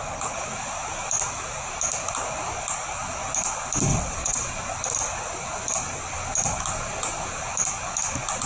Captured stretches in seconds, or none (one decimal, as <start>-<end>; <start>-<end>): 0.0-3.9; 4.5-8.5